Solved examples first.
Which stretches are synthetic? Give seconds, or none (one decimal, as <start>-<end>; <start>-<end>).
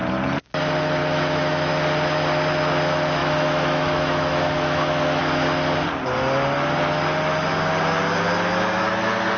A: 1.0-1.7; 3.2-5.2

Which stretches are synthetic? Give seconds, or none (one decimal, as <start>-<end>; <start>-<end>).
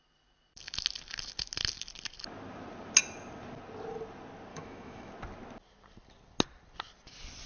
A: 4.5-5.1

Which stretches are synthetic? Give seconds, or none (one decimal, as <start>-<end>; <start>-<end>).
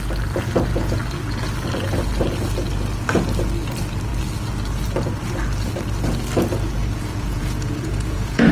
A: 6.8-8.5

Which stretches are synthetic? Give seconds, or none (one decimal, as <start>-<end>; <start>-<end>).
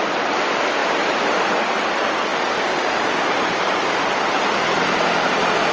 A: none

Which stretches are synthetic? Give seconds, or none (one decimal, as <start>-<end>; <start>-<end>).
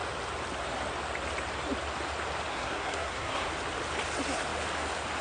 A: 2.5-3.5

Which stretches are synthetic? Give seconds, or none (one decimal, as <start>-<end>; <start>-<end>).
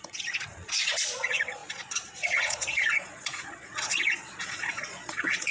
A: 0.0-5.5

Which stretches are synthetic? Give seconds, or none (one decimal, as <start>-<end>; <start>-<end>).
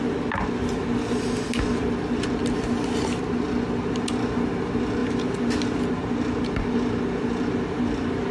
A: none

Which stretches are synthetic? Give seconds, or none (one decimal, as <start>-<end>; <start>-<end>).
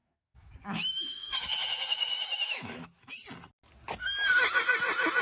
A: 0.0-3.1